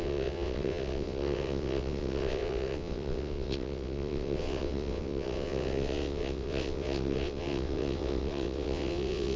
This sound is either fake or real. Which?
fake